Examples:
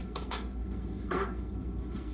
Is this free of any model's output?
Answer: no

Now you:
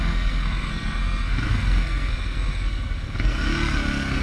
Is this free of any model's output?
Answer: no